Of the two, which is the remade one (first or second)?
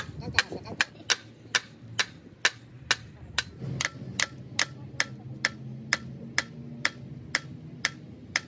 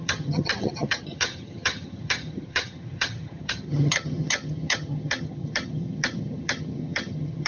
second